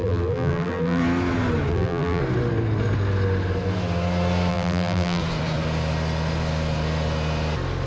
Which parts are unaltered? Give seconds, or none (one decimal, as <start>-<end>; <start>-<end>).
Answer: 1.0-1.7; 2.2-4.5; 5.2-7.9